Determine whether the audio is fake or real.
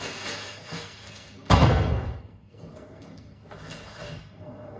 fake